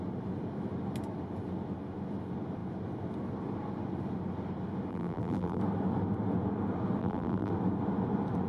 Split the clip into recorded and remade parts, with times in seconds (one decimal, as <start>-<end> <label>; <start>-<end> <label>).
0.0-4.9 recorded; 4.9-5.6 remade; 5.6-7.0 recorded; 7.0-7.5 remade; 7.5-8.5 recorded